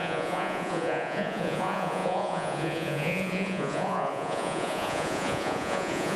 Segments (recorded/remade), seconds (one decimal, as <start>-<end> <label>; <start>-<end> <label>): 0.0-6.2 remade